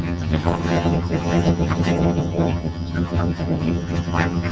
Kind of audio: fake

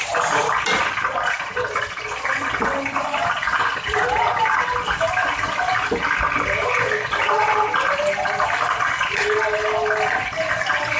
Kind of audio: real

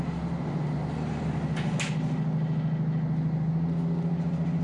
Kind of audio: real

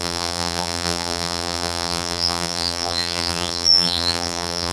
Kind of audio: fake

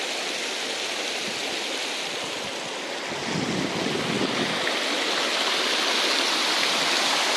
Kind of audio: real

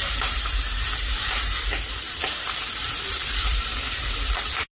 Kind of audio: real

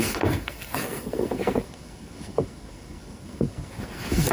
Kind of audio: fake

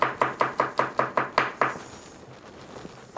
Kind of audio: real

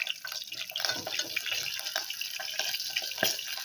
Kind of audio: real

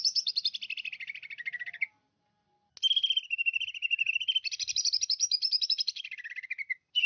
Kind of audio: real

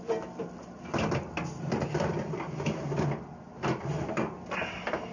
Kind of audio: real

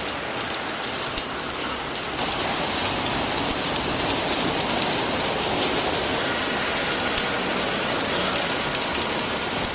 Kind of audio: real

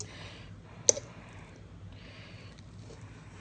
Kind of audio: real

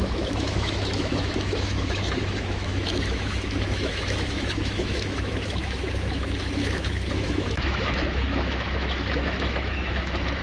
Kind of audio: fake